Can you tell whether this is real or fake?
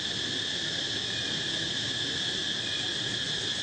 real